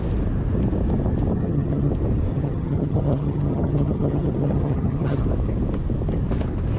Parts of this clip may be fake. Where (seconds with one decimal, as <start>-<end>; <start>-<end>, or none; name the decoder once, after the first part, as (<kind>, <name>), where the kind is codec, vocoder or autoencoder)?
1.3-1.9 (vocoder, HiFi-GAN); 2.3-5.2